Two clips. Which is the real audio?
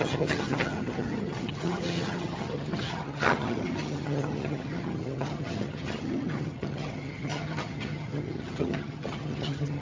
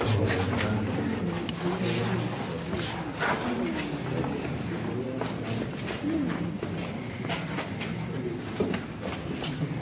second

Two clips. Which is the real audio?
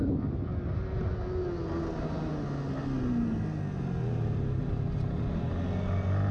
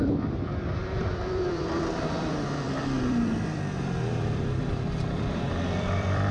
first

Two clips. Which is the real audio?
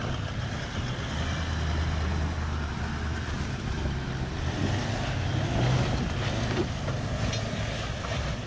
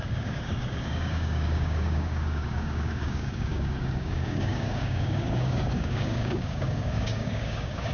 first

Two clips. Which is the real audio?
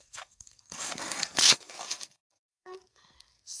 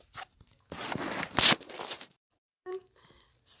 second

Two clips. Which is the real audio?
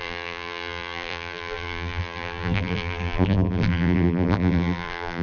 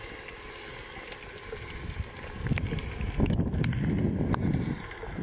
second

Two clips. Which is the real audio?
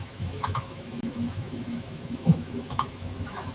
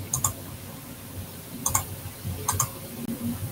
second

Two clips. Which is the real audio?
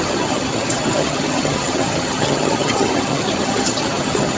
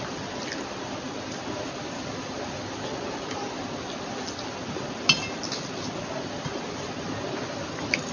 second